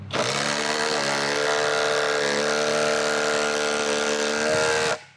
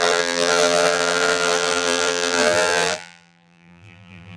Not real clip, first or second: second